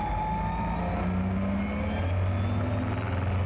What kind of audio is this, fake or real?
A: real